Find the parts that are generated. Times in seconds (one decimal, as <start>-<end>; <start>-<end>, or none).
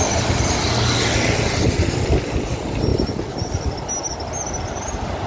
none